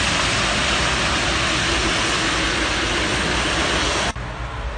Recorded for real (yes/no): yes